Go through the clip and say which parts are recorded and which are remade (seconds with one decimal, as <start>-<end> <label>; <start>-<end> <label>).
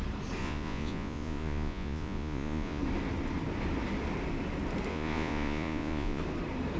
0.0-0.4 recorded; 0.4-2.8 remade; 2.8-4.9 recorded; 4.9-6.2 remade; 6.2-6.8 recorded